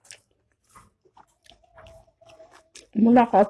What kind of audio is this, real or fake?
real